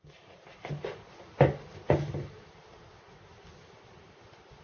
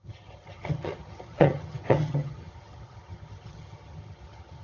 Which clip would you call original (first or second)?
first